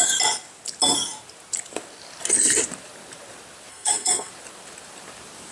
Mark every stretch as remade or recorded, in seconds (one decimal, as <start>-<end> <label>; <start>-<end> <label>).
0.0-3.7 recorded; 3.7-4.3 remade; 4.3-5.5 recorded